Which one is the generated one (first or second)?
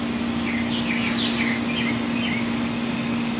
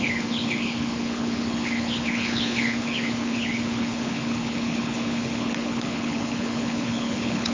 second